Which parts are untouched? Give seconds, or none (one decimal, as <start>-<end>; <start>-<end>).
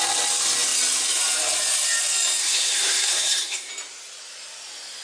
0.0-2.4; 3.7-5.0